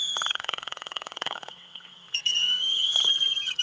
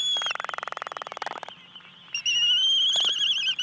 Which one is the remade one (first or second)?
first